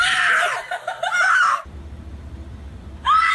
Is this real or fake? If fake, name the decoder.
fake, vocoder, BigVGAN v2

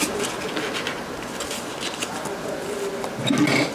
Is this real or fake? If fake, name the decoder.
real